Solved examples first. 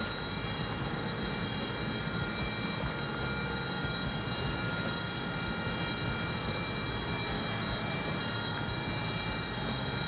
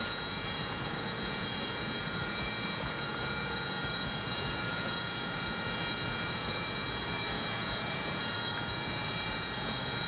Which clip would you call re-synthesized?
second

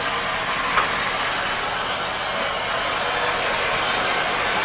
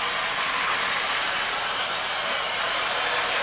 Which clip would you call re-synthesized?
second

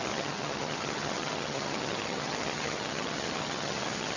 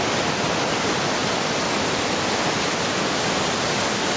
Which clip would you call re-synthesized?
first